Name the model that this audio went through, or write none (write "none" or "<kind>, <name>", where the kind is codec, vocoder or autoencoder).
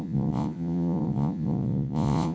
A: vocoder, Vocos